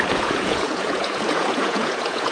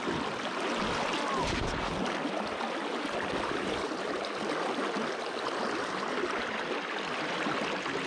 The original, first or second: second